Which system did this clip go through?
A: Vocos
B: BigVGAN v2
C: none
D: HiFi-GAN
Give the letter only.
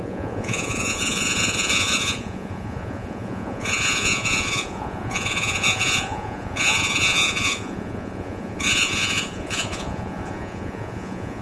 A